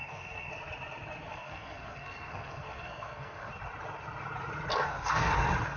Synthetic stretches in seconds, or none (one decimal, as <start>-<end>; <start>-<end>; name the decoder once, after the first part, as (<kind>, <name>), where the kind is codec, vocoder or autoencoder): 0.0-0.5 (codec, SNAC); 1.3-3.5; 4.7-5.3